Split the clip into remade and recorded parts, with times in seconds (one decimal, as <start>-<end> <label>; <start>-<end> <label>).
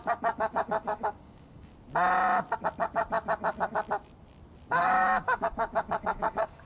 0.0-1.7 remade; 1.7-4.7 recorded; 4.7-6.7 remade